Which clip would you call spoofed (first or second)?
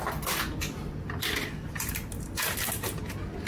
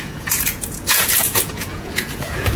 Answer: second